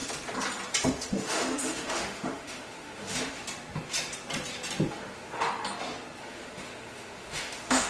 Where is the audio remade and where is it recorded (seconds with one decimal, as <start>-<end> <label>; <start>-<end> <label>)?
0.0-1.1 recorded; 1.1-3.4 remade; 3.4-4.9 recorded; 4.9-5.5 remade; 5.5-6.2 recorded; 6.2-7.9 remade